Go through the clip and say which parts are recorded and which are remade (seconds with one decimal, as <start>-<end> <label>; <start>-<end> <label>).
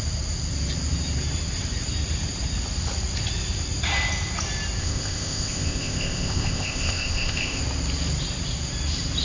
0.0-4.8 recorded; 4.8-7.6 remade; 7.6-9.2 recorded